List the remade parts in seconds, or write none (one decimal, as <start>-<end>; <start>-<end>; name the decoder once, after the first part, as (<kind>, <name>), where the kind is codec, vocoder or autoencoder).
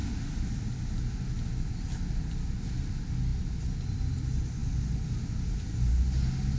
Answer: none